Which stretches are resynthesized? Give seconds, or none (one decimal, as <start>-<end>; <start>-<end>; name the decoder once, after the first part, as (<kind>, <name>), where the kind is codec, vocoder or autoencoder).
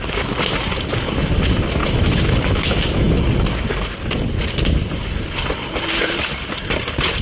1.8-3.2 (autoencoder, DAC-VAE)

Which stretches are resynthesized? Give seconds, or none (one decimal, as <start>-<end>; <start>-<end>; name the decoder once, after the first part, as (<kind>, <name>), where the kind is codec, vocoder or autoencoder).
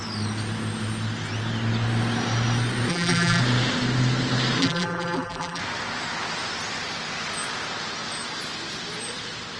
2.9-3.4 (vocoder, BigVGAN v2); 4.6-5.6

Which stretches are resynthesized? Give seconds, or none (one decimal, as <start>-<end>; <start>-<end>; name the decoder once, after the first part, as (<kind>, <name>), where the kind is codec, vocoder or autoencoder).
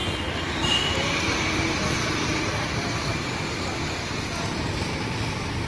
none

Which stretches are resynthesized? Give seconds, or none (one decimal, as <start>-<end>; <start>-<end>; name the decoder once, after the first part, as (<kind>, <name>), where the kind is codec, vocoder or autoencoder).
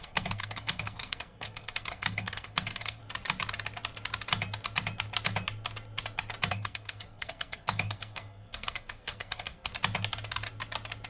0.0-3.0 (codec, SNAC); 6.5-9.7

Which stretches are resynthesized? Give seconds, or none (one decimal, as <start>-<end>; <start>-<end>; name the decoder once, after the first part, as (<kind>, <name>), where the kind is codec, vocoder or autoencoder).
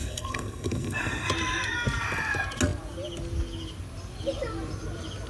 0.0-1.3 (codec, SNAC)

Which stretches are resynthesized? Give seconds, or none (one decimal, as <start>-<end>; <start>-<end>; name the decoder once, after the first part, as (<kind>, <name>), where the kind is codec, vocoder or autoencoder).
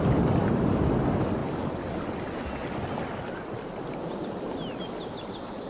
none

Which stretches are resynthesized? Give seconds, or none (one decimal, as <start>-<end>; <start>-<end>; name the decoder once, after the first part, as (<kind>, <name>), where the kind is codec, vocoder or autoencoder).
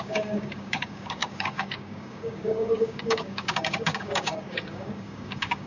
0.0-5.7 (codec, DAC)